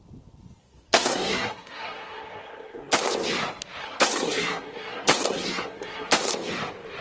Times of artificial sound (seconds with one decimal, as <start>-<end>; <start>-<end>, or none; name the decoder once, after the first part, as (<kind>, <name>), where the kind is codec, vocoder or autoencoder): 0.6-2.9 (codec, SNAC); 3.8-6.1